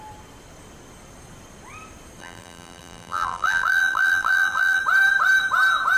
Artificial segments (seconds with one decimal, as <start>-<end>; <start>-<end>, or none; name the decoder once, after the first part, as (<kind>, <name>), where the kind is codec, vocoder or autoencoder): 2.2-4.8 (vocoder, BigVGAN v2)